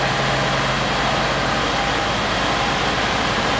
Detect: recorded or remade recorded